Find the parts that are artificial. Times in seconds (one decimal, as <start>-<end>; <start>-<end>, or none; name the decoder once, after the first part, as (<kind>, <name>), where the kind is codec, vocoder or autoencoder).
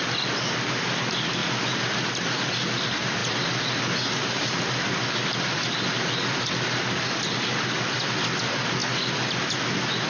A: none